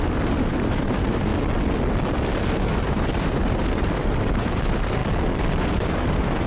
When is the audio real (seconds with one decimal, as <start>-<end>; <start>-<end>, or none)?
1.3-2.6; 5.0-5.7